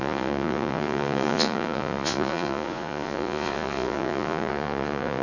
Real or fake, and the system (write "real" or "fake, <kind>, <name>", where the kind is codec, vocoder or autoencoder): fake, vocoder, Vocos